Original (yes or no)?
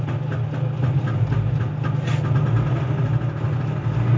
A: yes